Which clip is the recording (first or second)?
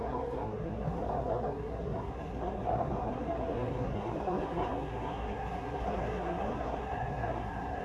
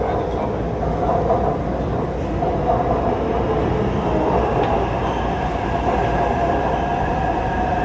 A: second